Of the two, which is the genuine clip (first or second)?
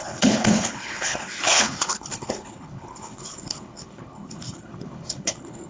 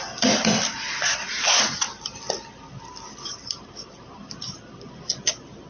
second